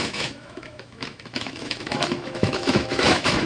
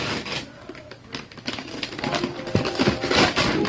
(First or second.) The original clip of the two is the second